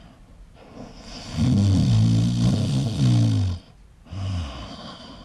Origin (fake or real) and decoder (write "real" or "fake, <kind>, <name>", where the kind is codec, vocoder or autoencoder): real